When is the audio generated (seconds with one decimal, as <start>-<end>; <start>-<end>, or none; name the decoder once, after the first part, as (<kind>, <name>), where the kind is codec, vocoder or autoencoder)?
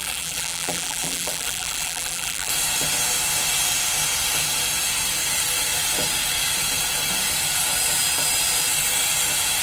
0.0-2.5 (vocoder, BigVGAN v2)